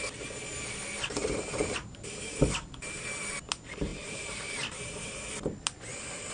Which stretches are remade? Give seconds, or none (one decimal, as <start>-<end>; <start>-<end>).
1.2-3.3; 3.9-5.3